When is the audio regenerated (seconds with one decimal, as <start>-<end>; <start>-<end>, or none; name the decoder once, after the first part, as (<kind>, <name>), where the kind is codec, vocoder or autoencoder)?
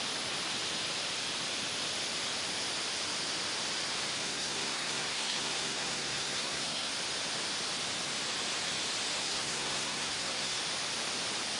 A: 4.2-6.9 (codec, SNAC); 9.2-10.6